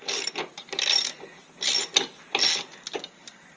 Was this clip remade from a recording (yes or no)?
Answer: no